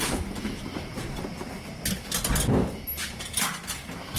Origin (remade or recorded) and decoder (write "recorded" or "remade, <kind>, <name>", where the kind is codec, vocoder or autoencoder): recorded